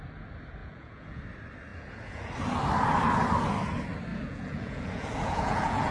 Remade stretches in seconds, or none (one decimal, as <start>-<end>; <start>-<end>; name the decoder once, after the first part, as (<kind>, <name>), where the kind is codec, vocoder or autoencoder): 0.6-1.2 (vocoder, Vocos); 1.7-2.2; 4.1-5.9